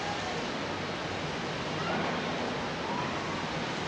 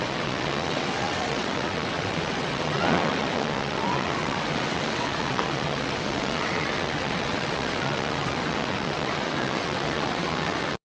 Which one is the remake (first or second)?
second